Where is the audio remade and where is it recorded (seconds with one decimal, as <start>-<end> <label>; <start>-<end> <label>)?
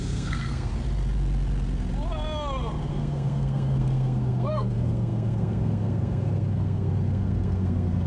0.0-0.7 remade; 0.7-2.9 recorded; 2.9-8.1 remade